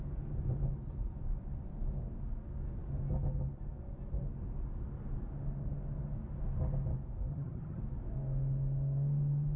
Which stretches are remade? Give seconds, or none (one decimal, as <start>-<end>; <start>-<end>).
7.3-7.8